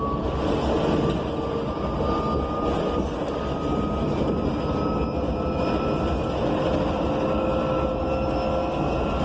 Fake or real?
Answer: real